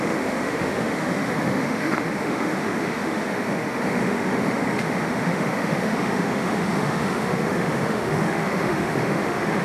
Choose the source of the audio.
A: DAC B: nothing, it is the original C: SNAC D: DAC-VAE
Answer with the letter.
D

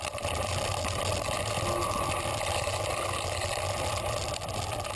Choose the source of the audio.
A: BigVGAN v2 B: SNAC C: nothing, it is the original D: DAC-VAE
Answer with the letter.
C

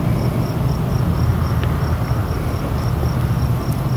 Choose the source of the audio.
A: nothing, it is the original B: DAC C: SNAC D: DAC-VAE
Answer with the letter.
A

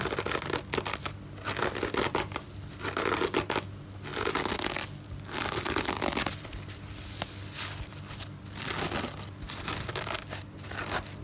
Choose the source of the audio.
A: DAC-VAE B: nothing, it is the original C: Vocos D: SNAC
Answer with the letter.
B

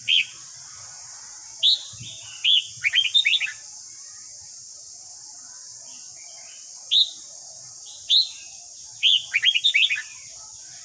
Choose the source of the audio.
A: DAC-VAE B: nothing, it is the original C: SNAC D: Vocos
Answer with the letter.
B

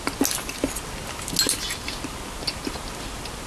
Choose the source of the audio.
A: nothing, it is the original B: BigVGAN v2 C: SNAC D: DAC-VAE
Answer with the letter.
A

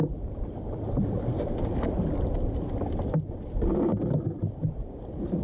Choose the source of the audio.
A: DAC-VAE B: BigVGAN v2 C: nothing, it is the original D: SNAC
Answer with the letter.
C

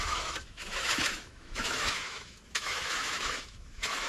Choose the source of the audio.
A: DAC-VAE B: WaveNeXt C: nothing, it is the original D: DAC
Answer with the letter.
A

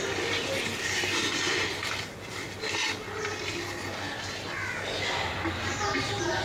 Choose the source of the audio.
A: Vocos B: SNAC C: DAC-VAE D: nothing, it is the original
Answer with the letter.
D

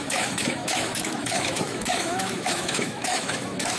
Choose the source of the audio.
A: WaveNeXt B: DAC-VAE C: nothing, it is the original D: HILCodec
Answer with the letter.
B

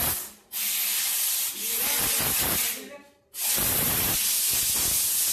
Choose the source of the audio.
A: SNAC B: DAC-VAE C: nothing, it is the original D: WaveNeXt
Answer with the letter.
C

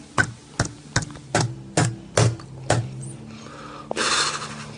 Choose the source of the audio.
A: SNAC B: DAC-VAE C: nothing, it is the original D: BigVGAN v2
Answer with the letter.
C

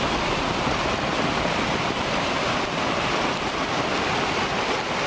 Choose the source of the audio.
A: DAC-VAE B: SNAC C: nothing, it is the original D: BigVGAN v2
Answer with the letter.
C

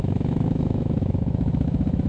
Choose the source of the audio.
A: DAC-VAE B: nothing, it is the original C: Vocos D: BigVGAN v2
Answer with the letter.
A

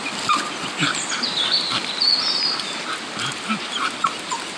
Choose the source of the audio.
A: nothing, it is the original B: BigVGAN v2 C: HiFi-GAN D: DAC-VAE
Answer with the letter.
A